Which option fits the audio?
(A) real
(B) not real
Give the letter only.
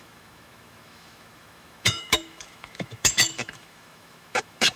B